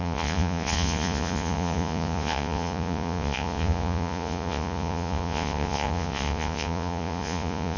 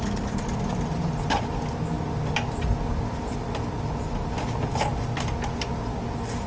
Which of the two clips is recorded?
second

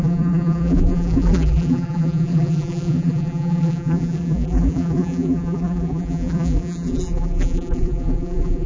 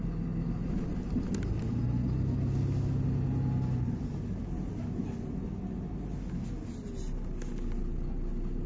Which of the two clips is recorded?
second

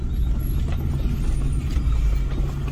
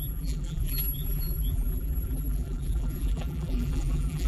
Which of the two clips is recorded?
first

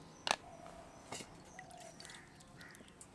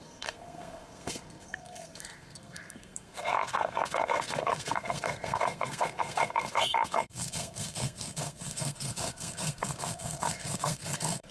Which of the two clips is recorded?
first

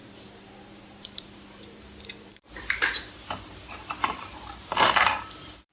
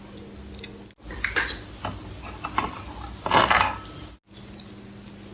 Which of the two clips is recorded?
second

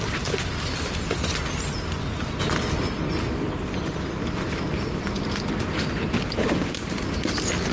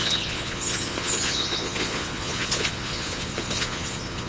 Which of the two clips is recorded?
first